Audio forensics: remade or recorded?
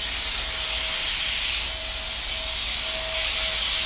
recorded